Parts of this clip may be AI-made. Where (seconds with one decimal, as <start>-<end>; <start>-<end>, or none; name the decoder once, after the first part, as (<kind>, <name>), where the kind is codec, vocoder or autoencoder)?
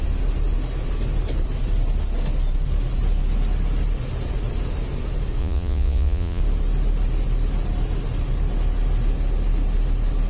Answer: 5.4-6.4 (vocoder, Vocos)